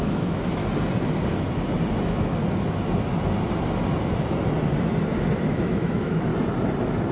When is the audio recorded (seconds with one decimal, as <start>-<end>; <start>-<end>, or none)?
0.6-2.0; 2.4-5.4; 6.3-7.1